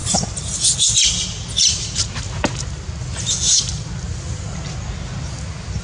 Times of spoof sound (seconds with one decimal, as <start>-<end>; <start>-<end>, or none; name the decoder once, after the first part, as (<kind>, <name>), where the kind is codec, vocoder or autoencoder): none